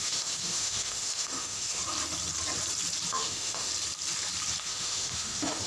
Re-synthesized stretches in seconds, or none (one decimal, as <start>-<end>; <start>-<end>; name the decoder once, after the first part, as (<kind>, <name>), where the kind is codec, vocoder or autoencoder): 0.0-1.8 (autoencoder, DAC-VAE); 3.1-3.7; 4.6-5.7